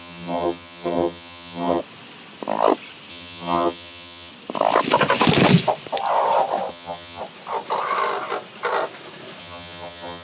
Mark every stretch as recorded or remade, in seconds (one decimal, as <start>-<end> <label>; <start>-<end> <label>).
0.0-1.8 remade; 1.8-3.1 recorded; 3.1-4.3 remade; 4.3-6.7 recorded; 6.7-7.2 remade; 7.2-9.4 recorded; 9.4-10.2 remade